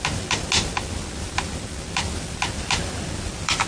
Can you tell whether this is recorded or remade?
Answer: recorded